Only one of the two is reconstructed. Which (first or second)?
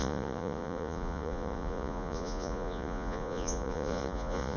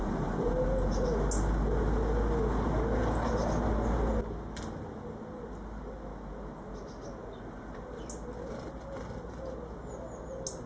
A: first